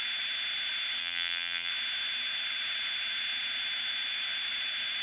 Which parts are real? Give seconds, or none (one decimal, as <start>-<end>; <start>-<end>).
0.0-1.0; 1.7-5.0